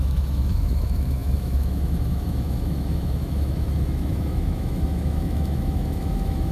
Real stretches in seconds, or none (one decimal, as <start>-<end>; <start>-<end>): none